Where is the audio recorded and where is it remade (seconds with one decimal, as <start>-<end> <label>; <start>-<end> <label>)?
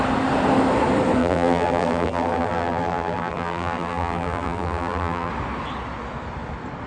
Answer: 0.0-1.2 recorded; 1.2-5.3 remade; 5.3-6.9 recorded